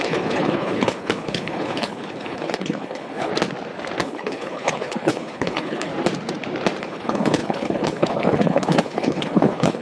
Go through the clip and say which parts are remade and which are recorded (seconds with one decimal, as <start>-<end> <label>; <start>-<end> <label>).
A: 0.0-3.3 remade; 3.3-4.0 recorded; 4.0-5.9 remade; 5.9-6.8 recorded; 6.8-9.8 remade